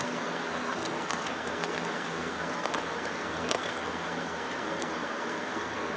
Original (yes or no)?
no